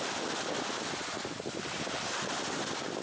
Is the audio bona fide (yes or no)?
yes